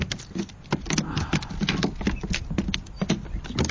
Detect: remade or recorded recorded